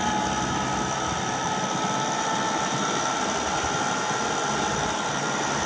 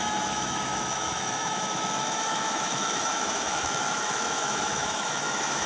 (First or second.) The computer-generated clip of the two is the second